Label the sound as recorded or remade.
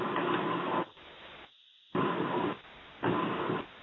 recorded